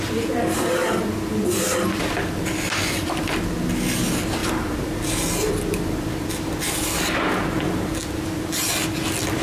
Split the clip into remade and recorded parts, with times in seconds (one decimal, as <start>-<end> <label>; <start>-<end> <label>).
0.0-9.4 recorded